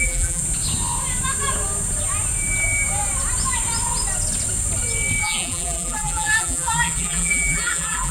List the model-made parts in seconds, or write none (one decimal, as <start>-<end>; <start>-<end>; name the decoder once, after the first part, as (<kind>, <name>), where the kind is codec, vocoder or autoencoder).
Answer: 0.0-0.4 (vocoder, BigVGAN v2); 5.2-8.1